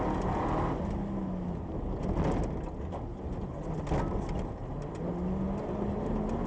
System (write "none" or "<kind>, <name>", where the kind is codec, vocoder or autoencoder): none